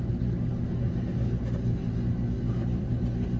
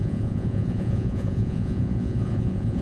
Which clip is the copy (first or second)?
second